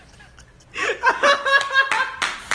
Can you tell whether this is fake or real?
real